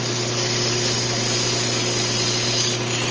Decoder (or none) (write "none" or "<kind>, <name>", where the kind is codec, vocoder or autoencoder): none